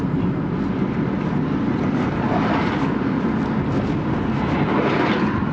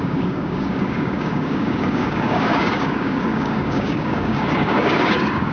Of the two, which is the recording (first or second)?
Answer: first